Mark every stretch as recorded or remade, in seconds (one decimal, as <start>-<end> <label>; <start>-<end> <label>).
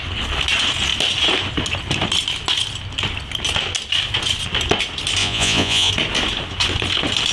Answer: 0.0-5.2 recorded; 5.2-5.9 remade; 5.9-7.3 recorded